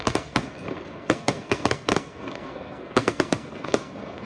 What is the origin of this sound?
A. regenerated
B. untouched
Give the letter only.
A